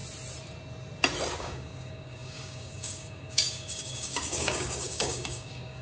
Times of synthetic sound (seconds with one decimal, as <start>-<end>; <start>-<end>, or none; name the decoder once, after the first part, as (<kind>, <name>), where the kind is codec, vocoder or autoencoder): 1.4-5.8 (codec, DAC)